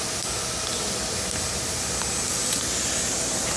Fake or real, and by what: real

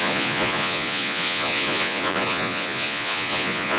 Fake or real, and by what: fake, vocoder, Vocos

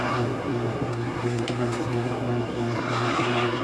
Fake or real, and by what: fake, codec, SNAC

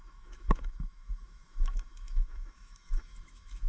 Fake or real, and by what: fake, autoencoder, DAC-VAE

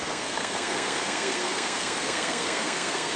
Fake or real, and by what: fake, codec, SNAC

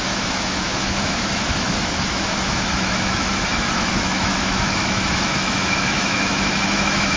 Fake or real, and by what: fake, autoencoder, DAC-VAE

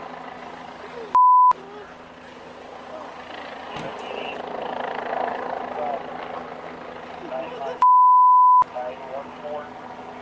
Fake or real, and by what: real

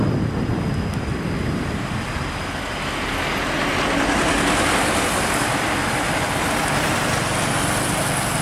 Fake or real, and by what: real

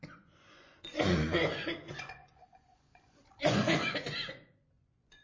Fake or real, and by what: fake, vocoder, Vocos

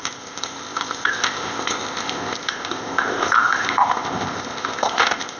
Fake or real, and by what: fake, codec, ZipCodec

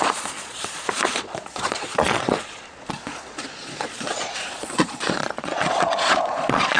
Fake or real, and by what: fake, vocoder, Vocos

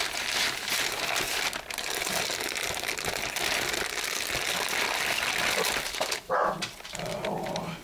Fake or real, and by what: real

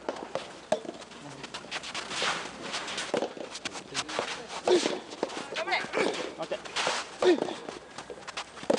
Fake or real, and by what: real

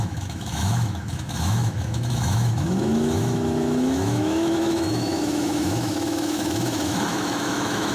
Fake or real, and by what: fake, autoencoder, DAC-VAE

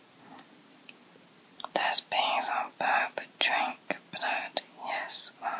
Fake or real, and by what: real